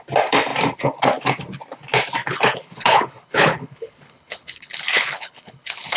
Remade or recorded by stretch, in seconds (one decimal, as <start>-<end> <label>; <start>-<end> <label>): 0.0-2.2 recorded; 2.2-6.0 remade